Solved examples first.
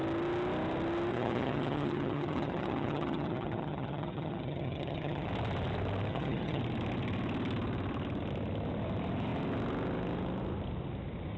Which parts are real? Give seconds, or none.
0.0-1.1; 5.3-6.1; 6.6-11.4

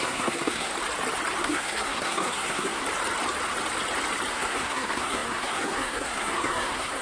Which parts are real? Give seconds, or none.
0.7-1.4; 2.8-4.3

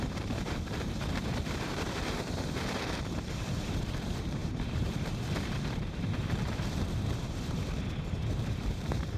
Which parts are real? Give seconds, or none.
none

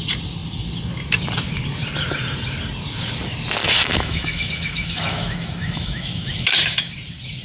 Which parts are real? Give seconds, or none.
0.0-3.6; 6.9-7.4

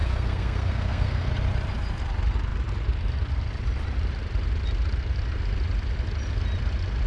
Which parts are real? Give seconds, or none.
1.3-7.1

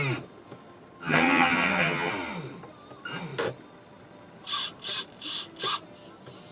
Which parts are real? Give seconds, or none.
0.0-1.0; 2.1-6.5

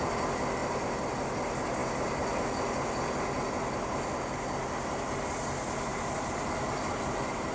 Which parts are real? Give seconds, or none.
0.0-0.6; 1.1-1.8; 3.5-5.9